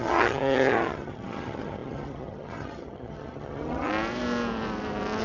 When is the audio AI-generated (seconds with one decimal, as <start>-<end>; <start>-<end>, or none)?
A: 0.0-3.9